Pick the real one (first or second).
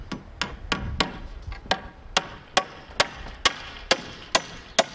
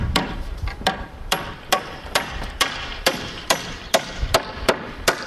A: first